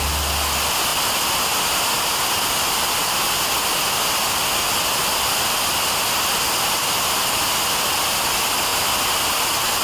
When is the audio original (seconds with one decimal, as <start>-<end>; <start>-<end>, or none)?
0.0-9.8